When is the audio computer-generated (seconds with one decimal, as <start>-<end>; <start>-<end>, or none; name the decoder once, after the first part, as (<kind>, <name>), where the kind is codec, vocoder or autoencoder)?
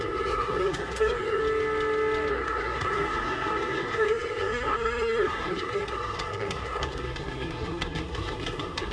0.0-1.4 (codec, SNAC); 2.3-8.9